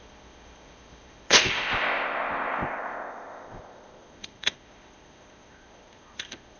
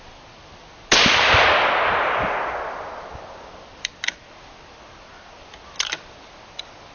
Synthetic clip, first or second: first